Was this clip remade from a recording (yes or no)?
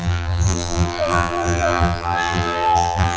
yes